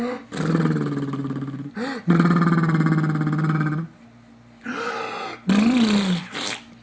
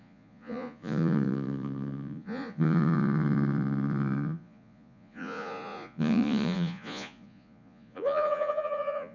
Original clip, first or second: first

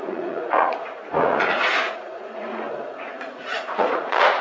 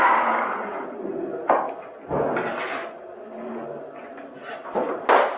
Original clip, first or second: second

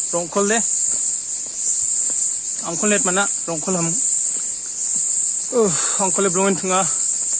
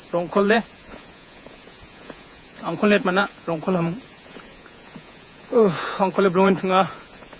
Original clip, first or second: first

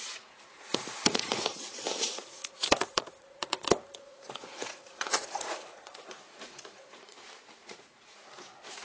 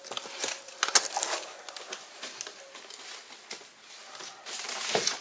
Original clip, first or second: second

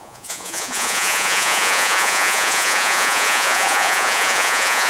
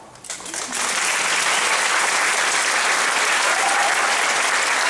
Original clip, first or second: second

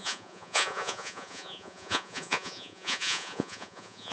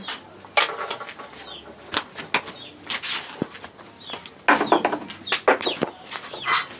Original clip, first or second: second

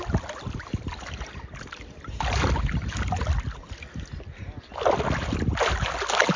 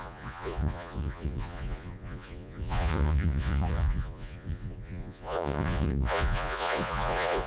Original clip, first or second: first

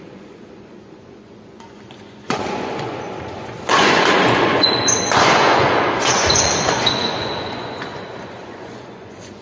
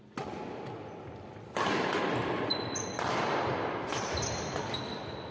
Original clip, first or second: second